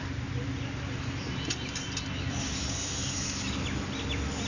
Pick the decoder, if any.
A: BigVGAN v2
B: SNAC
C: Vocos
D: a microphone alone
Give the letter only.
D